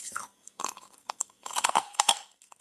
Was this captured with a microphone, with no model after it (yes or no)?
no